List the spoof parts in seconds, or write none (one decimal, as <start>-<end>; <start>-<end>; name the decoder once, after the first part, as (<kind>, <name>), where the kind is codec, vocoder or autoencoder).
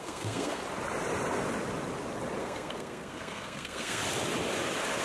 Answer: 0.0-0.6 (codec, SNAC); 2.4-4.0